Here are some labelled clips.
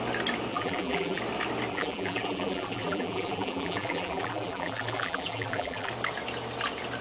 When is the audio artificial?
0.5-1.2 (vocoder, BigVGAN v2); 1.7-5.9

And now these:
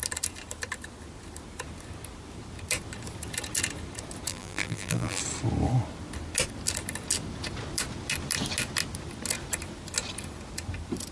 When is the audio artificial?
4.3-5.2 (vocoder, BigVGAN v2)